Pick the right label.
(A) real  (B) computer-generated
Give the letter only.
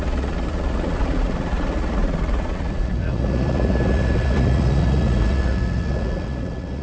B